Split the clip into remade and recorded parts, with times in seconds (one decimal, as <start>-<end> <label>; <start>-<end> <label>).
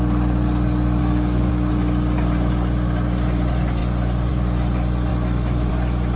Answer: 0.0-1.0 recorded; 1.0-1.7 remade; 1.7-6.2 recorded